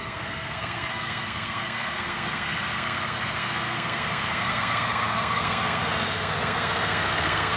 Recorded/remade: remade